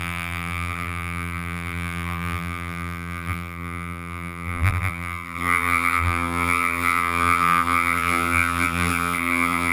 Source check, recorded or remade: remade